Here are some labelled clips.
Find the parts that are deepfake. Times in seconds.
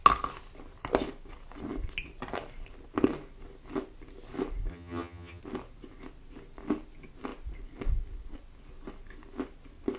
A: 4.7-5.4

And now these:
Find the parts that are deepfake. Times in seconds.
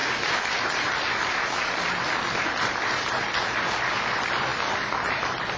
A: none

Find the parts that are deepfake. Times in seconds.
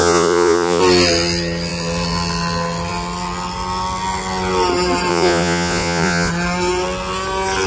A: 0.0-0.8; 5.1-6.3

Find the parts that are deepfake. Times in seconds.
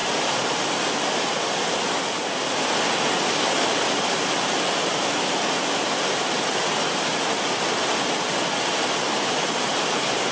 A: none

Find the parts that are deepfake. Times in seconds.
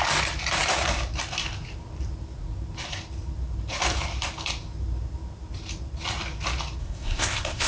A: 6.8-7.7